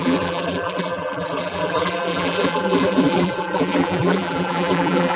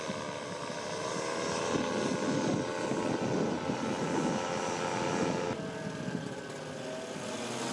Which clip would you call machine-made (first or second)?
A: first